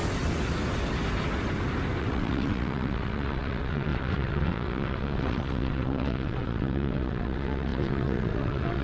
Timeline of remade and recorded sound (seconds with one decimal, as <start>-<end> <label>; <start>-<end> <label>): 0.0-2.0 recorded; 2.0-8.8 remade